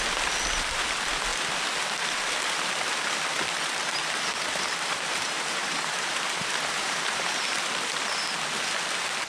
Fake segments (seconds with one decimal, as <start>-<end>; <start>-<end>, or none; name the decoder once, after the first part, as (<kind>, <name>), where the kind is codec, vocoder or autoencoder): 4.0-7.6 (vocoder, BigVGAN v2)